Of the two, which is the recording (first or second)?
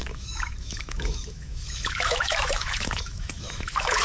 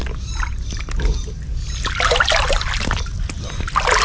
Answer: second